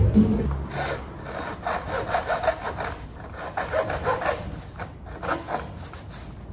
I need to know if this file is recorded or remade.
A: recorded